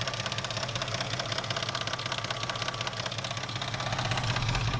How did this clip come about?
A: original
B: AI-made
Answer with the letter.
A